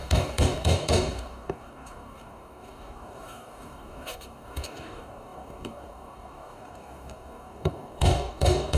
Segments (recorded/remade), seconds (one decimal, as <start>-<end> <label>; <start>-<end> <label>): 0.0-8.8 remade